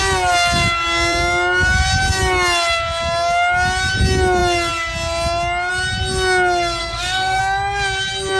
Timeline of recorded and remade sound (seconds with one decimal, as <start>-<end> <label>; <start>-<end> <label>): 0.0-6.8 recorded; 6.8-7.4 remade; 7.4-8.4 recorded